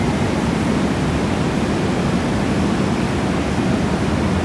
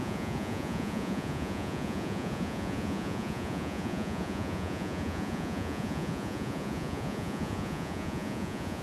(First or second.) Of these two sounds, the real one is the first